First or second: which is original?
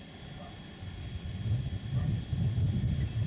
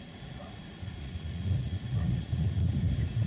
first